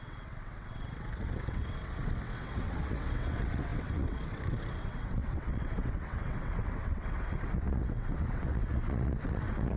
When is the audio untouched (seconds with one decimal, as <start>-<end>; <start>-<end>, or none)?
none